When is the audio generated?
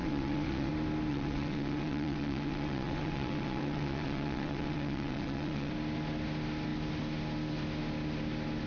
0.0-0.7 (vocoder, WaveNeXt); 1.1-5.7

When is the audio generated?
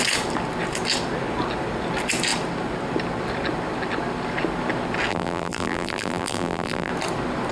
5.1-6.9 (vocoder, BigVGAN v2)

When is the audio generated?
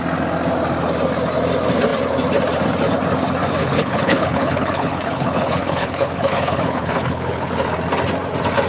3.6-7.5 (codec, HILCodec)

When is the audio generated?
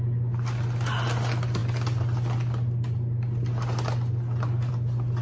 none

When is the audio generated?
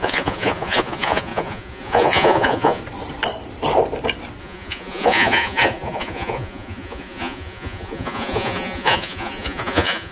0.0-2.8 (vocoder, Vocos); 4.4-10.1